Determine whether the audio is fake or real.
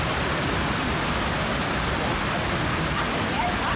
real